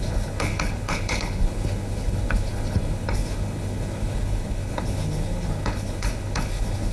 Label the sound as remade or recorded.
remade